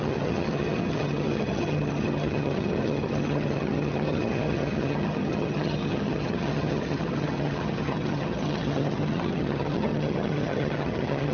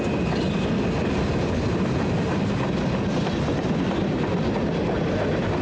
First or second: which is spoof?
first